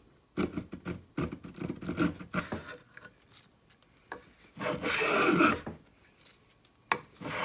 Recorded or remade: recorded